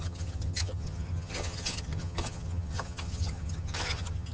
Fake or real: fake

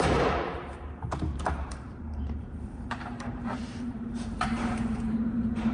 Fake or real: fake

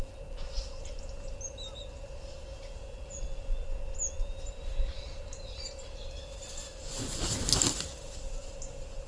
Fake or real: real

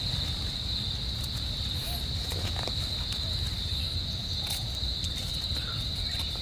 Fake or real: real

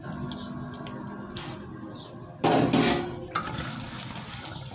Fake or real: real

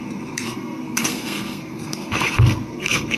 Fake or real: fake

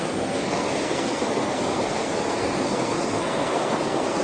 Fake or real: fake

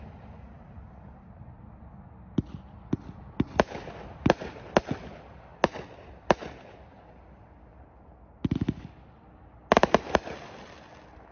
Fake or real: real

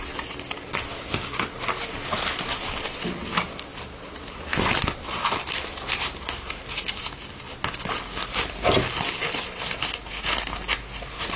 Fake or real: real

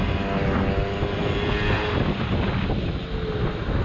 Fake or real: real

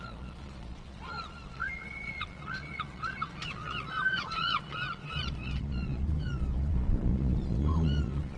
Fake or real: fake